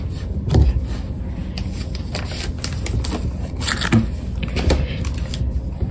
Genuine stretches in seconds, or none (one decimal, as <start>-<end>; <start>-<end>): 0.0-1.4; 2.0-5.9